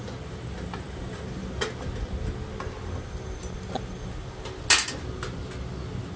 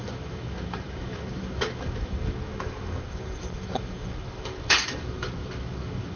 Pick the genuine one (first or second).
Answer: first